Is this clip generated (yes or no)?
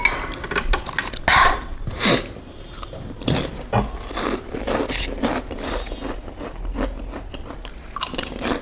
no